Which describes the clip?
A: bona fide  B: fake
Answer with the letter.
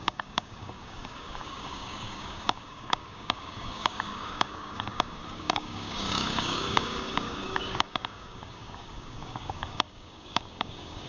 B